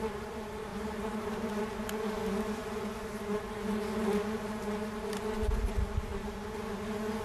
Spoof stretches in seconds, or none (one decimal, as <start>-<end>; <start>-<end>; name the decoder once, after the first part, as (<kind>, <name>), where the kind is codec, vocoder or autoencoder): 0.7-1.6 (vocoder, BigVGAN v2)

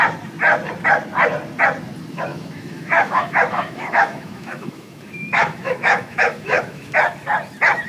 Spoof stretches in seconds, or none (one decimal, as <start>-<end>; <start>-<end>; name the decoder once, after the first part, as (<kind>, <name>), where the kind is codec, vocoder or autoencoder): 2.3-7.0 (autoencoder, DAC-VAE)

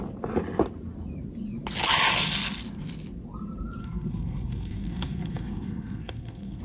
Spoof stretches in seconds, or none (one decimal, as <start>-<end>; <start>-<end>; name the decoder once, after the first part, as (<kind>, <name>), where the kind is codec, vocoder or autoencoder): 3.8-6.6 (codec, SNAC)

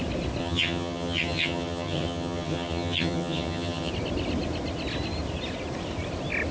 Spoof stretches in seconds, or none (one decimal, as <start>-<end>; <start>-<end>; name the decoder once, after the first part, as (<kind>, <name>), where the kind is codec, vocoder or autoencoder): 0.4-3.9 (vocoder, HiFi-GAN)

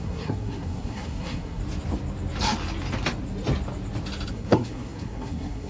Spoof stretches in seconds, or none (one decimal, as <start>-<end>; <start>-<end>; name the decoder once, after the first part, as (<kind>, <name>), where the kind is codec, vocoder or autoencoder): 0.0-1.6 (codec, SNAC); 4.3-5.7